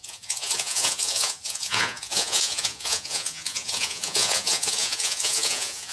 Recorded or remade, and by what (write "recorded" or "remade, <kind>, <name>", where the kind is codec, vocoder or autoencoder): remade, vocoder, Vocos